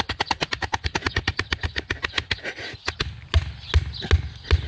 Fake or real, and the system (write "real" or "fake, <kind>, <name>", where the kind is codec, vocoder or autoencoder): real